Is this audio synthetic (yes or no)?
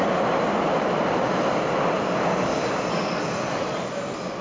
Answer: no